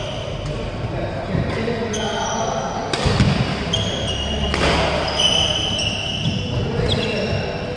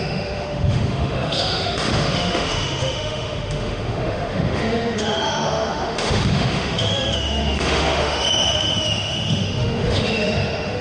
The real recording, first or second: first